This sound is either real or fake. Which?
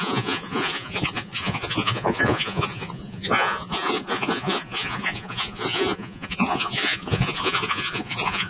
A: fake